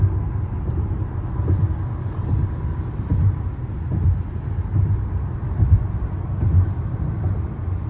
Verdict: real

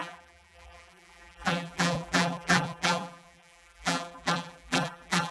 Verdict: fake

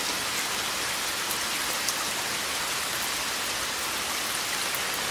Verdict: real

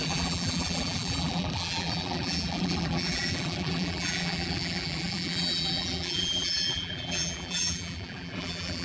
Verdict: fake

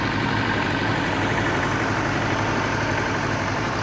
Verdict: fake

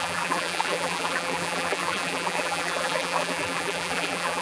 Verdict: fake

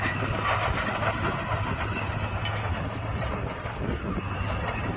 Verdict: real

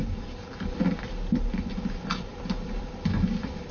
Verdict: fake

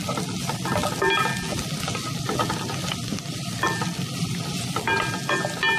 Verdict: real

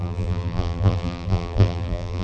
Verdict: fake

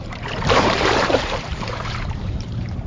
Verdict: fake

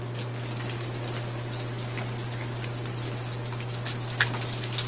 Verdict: real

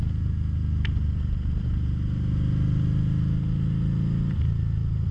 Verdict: real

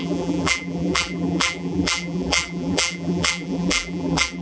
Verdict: fake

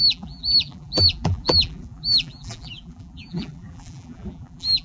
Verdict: fake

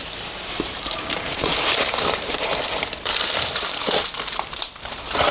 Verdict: fake